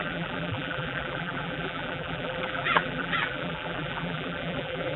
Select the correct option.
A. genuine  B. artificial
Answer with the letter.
B